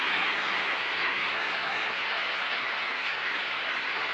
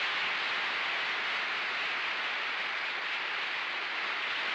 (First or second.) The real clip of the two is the second